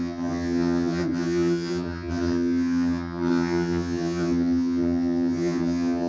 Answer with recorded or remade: remade